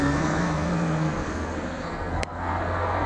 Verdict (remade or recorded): remade